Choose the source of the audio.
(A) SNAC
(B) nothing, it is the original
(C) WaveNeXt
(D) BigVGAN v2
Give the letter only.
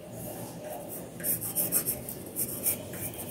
B